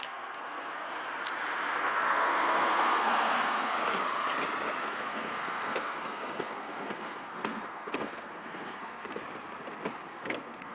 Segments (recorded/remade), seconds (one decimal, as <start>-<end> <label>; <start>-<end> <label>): 0.0-0.9 remade; 0.9-1.8 recorded; 1.8-3.7 remade; 3.7-4.8 recorded; 4.8-9.2 remade; 9.2-10.1 recorded; 10.1-10.7 remade